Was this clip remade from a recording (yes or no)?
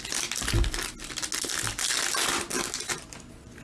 no